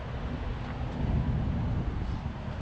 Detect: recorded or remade recorded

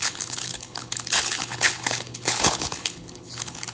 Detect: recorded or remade remade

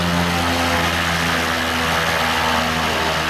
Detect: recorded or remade recorded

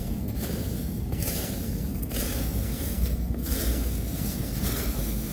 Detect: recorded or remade remade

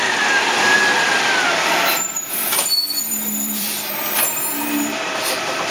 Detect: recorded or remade remade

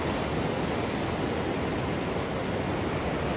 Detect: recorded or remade recorded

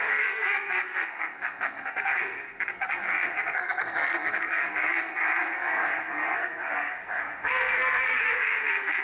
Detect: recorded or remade remade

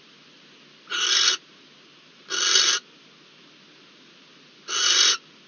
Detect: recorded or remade recorded